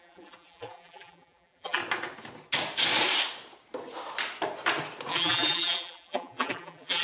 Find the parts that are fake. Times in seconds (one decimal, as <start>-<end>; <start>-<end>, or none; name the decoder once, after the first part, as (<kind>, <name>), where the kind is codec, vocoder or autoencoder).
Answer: 0.0-1.8 (vocoder, BigVGAN v2); 5.1-7.0